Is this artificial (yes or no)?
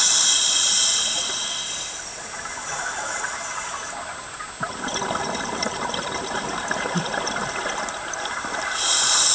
no